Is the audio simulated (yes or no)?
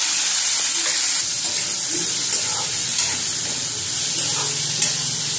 no